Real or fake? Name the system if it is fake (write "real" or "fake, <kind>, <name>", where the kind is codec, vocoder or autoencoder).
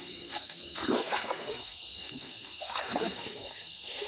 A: fake, codec, SNAC